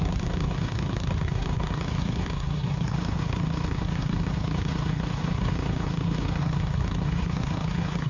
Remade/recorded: remade